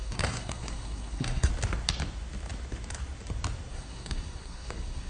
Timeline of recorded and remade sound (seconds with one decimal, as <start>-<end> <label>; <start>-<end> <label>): 0.0-1.5 remade; 1.5-3.7 recorded; 3.7-5.1 remade